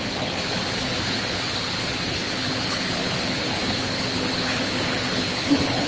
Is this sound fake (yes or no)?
yes